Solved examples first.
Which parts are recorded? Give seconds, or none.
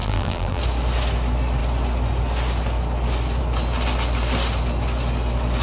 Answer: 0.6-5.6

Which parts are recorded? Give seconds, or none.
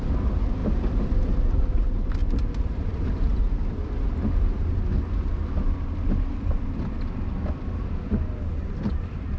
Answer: 0.0-0.6; 1.1-2.2; 5.0-8.5